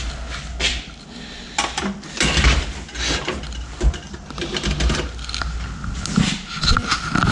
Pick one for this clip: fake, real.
real